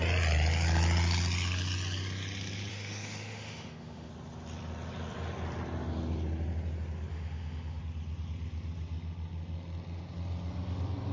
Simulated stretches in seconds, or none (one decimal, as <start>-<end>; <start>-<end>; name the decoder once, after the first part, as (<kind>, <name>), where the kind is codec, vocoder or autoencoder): 2.7-4.1 (autoencoder, DAC-VAE); 7.1-7.8